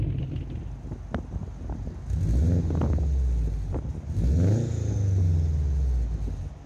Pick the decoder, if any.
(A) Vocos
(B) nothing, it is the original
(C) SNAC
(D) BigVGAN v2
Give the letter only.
B